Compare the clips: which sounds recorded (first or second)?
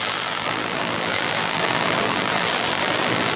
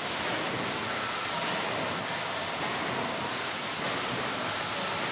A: second